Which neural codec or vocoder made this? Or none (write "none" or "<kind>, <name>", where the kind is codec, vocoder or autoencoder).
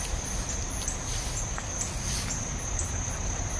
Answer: none